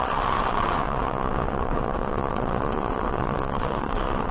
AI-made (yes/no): yes